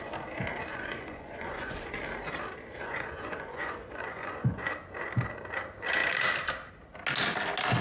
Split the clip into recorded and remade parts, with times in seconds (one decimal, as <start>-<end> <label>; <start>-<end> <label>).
0.0-0.7 recorded; 0.7-2.0 remade; 2.0-2.8 recorded; 2.8-4.7 remade; 4.7-7.8 recorded